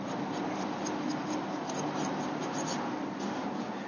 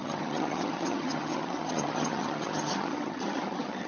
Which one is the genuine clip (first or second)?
first